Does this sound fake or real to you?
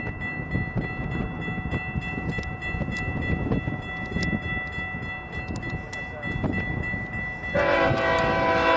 real